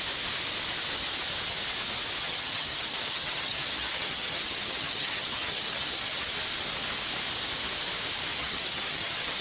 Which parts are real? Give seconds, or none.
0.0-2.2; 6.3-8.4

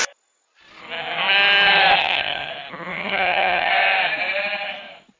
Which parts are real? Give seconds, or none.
0.0-2.0; 2.5-2.9; 3.7-5.2

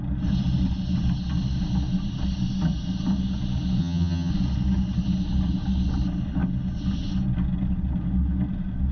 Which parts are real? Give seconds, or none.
0.0-3.8; 4.3-8.9

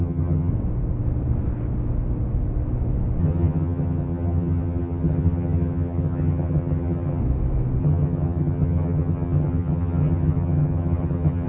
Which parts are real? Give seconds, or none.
0.5-3.2; 7.2-7.8